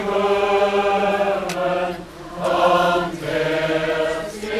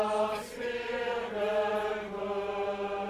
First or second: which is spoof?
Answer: first